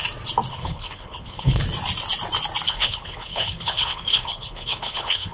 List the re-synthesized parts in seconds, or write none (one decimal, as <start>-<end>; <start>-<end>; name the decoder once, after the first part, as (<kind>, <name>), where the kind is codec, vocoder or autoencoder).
0.5-1.6 (codec, HILCodec); 2.7-5.3